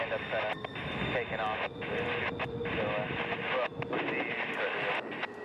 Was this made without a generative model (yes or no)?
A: yes